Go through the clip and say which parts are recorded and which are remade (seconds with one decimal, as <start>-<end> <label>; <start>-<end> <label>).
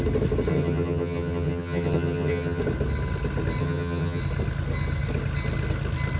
0.0-0.5 recorded; 0.5-2.6 remade; 2.6-3.6 recorded; 3.6-4.2 remade; 4.2-6.2 recorded